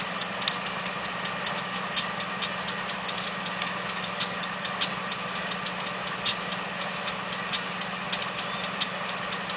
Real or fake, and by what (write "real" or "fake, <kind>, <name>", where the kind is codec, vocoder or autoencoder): real